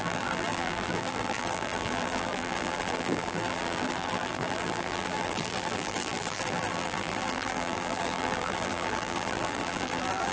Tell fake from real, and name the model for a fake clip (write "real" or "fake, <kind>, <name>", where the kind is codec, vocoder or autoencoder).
fake, vocoder, BigVGAN v2